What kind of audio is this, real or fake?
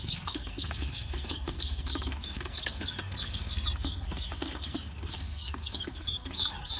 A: fake